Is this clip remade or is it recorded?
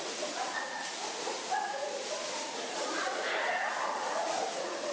remade